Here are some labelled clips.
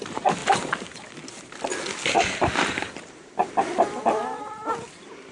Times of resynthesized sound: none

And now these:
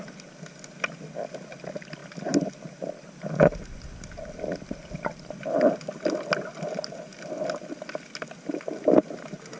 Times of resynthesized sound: none

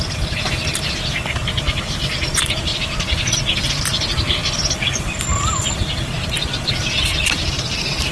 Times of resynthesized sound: none

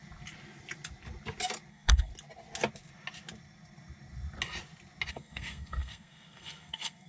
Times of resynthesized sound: 1.7-2.1 (codec, SNAC); 5.1-7.1

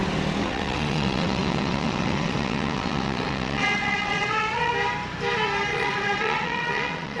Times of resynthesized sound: 0.4-4.7 (vocoder, WaveNeXt); 5.7-7.2

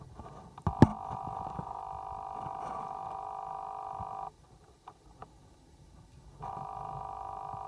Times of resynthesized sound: none